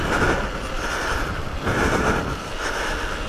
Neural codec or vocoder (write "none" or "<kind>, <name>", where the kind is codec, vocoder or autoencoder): none